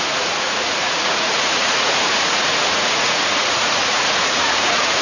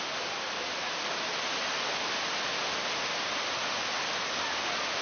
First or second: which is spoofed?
first